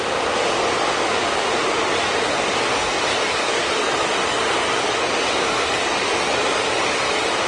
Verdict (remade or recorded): remade